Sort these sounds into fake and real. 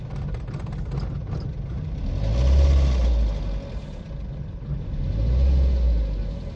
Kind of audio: real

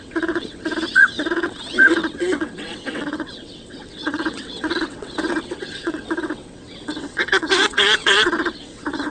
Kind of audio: fake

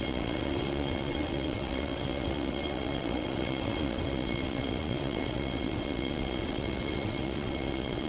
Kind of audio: fake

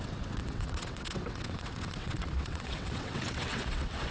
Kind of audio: fake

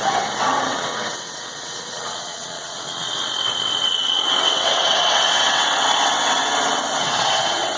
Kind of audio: fake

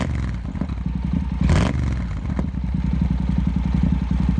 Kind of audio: real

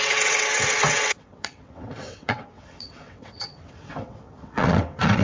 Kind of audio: fake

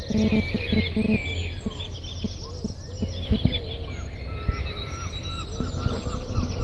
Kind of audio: real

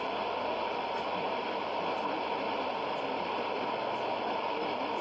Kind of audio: real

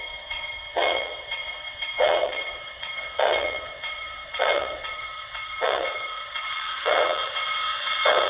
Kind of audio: fake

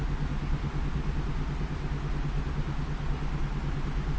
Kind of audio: real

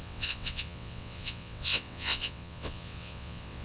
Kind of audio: fake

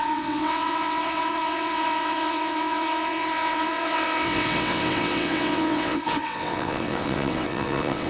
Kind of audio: fake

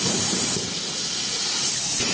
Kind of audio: real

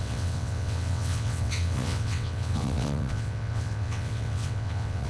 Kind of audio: fake